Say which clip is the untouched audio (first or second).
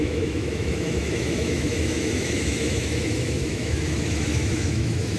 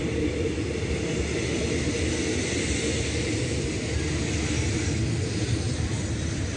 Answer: second